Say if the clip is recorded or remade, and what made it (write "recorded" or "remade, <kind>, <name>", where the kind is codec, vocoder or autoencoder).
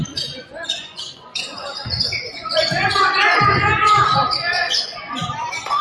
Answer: remade, vocoder, Vocos